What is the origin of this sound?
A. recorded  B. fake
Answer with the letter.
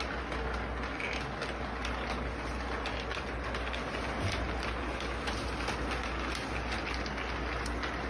A